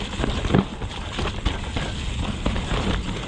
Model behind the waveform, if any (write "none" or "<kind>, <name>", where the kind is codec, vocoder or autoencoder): none